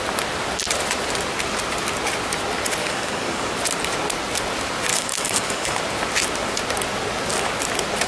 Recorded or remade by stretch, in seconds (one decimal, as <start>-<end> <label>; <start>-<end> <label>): 0.0-2.8 recorded; 2.8-3.5 remade; 3.5-4.9 recorded; 4.9-5.8 remade; 5.8-8.1 recorded